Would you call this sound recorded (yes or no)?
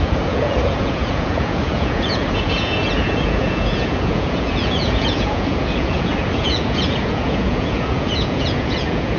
no